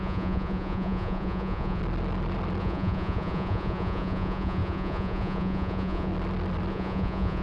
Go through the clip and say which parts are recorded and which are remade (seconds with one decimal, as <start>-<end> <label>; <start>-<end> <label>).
0.0-1.8 remade; 1.8-2.6 recorded; 2.6-6.1 remade; 6.1-6.7 recorded; 6.7-7.4 remade